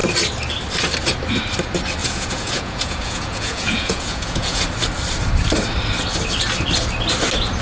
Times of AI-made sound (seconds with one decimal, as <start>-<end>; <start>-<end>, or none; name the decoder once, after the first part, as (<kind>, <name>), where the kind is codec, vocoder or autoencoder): 2.0-4.6 (vocoder, Vocos)